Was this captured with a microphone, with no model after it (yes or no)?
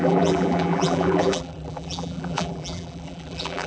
no